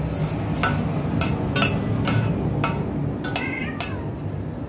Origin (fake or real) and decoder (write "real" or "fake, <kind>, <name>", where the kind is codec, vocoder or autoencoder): real